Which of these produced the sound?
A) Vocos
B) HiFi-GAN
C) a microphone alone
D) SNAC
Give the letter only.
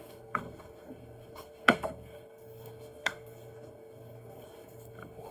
D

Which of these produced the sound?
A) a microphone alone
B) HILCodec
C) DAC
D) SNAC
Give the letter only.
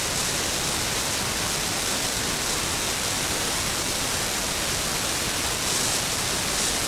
A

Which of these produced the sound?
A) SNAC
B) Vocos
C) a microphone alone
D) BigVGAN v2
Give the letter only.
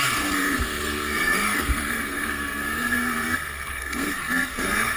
A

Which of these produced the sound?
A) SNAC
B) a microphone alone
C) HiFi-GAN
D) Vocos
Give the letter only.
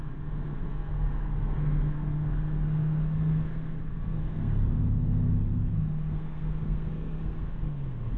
A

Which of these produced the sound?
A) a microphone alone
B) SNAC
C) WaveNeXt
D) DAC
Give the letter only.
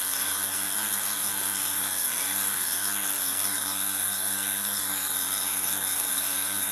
B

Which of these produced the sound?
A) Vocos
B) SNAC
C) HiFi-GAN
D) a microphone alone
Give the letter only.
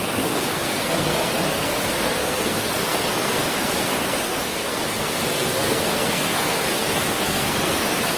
B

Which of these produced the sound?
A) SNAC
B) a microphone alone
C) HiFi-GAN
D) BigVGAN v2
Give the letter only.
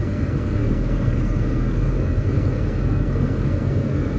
A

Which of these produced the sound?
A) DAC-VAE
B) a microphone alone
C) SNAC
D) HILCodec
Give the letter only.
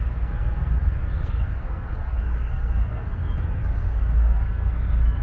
C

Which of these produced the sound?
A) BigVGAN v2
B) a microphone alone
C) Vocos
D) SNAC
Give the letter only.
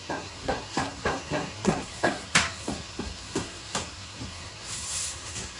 D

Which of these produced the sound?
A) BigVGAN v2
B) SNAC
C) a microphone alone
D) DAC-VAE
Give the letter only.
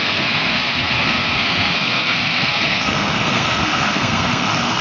B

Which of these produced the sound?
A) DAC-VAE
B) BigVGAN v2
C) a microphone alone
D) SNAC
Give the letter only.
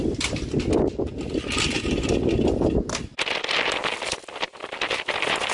C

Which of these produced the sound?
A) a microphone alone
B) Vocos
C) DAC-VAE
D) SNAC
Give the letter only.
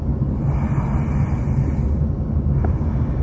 A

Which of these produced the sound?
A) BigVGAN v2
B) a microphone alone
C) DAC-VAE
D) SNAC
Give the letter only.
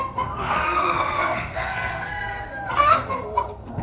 D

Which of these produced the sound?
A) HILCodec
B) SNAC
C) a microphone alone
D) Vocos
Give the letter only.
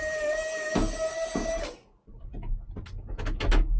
C